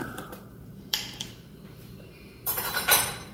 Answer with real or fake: fake